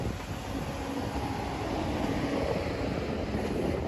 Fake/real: real